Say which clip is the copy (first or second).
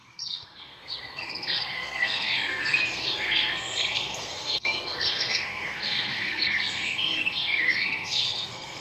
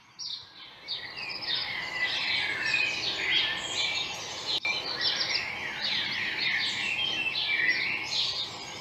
first